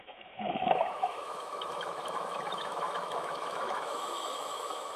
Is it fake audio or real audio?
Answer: fake